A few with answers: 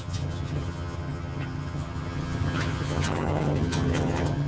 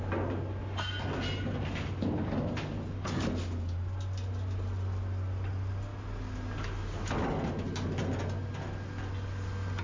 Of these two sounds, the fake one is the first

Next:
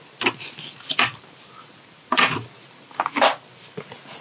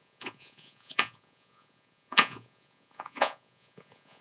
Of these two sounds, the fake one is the second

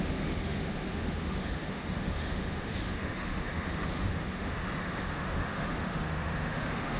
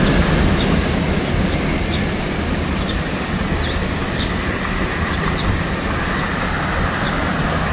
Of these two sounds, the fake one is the first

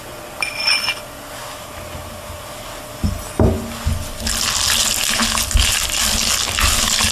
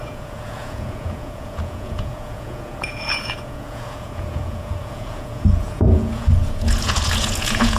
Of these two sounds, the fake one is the second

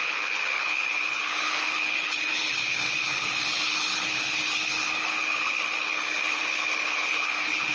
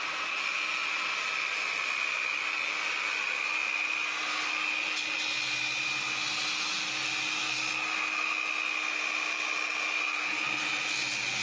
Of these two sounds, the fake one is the first